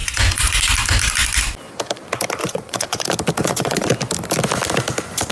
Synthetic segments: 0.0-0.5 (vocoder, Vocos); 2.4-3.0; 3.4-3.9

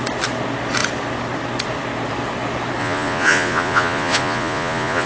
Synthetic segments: 2.8-5.1 (vocoder, Vocos)

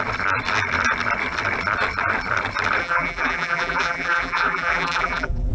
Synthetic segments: 2.8-5.5 (vocoder, BigVGAN v2)

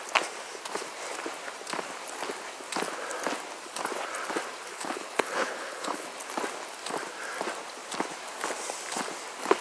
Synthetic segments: 4.7-6.1 (codec, HILCodec)

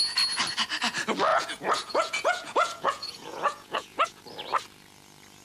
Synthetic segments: 1.3-4.2 (vocoder, Vocos)

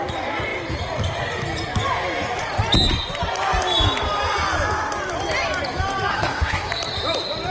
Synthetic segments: 6.1-6.7 (codec, SNAC)

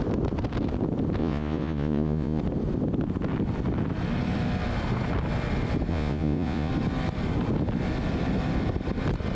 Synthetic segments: 1.2-2.4 (vocoder, Vocos); 5.9-6.7

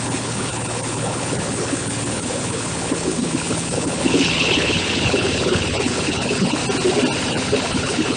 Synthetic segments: 0.0-6.6 (codec, HILCodec); 7.3-8.2